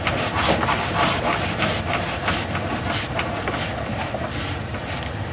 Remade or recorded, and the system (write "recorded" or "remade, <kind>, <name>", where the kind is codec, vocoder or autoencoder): recorded